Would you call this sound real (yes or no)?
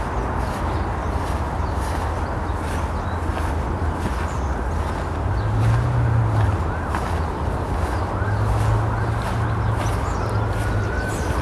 yes